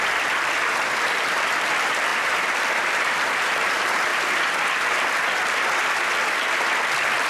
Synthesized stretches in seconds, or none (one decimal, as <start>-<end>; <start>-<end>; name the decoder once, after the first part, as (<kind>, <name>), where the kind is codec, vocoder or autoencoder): 0.0-4.1 (vocoder, BigVGAN v2); 6.2-7.3